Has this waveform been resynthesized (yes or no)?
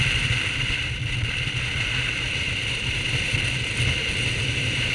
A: yes